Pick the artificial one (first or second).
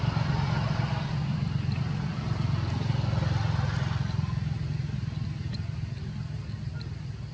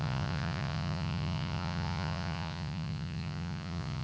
second